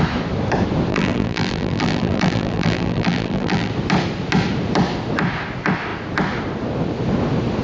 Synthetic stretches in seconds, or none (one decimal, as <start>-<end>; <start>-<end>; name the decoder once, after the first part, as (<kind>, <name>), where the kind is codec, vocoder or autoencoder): 0.9-3.7 (vocoder, BigVGAN v2)